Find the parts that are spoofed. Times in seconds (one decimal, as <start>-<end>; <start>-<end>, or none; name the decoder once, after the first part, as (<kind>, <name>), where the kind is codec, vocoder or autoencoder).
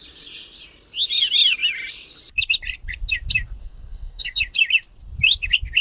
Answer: 3.6-4.4 (codec, SNAC)